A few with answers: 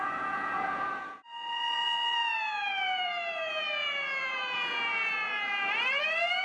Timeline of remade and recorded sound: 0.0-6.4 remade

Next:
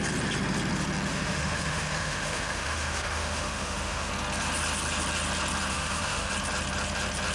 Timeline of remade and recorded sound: 0.0-1.1 recorded; 1.1-4.1 remade; 4.1-5.7 recorded; 5.7-6.3 remade; 6.3-7.3 recorded

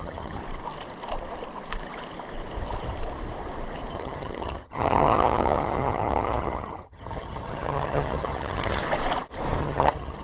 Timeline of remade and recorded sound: 0.0-0.4 remade; 0.4-3.9 recorded; 3.9-8.8 remade; 8.8-9.6 recorded; 9.6-10.2 remade

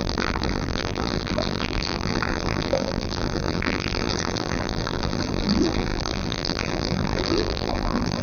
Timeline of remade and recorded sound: 0.0-8.2 remade

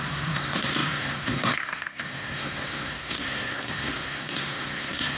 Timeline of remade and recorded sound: 0.0-5.2 remade

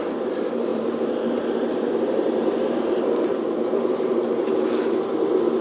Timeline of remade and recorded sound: 0.0-0.7 recorded; 0.7-3.6 remade; 3.6-5.6 recorded